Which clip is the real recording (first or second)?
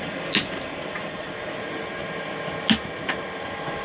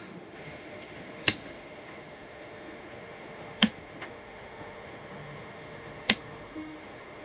first